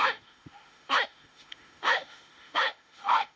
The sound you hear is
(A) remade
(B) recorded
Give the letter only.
A